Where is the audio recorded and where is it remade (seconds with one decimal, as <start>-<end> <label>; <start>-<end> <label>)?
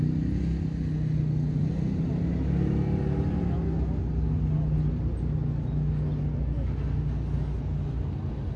0.0-8.6 recorded